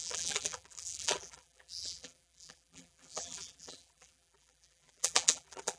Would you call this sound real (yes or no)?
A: no